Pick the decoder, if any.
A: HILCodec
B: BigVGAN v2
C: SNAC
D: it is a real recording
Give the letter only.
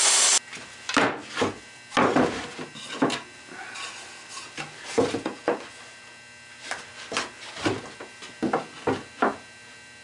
D